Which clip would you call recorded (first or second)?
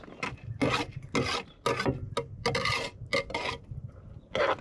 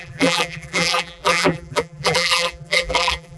first